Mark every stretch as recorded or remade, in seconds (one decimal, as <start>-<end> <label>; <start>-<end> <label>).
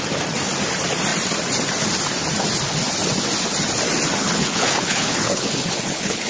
0.0-4.2 recorded; 4.2-6.3 remade